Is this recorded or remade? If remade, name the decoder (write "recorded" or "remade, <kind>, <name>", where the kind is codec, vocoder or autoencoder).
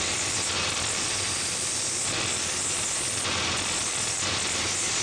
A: recorded